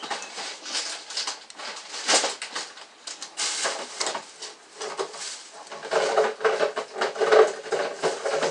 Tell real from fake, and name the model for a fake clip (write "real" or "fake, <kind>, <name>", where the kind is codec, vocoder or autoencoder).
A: real